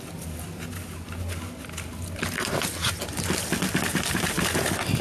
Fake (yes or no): no